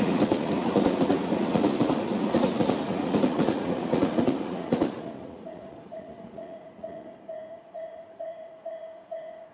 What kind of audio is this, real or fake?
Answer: fake